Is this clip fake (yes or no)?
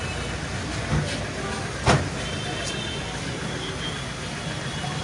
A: no